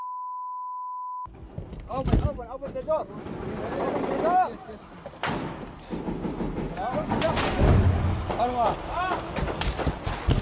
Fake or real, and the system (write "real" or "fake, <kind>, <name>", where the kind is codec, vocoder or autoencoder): real